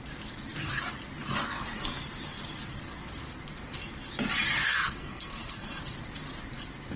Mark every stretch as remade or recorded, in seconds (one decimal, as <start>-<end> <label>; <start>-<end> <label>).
0.0-4.6 recorded; 4.6-5.8 remade; 5.8-7.0 recorded